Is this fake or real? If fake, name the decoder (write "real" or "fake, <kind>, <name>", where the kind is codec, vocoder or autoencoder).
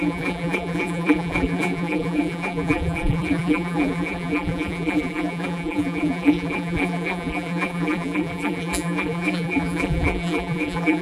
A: fake, vocoder, BigVGAN v2